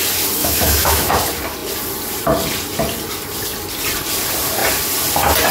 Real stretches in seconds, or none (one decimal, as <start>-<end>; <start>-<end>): 0.0-0.4; 1.1-5.5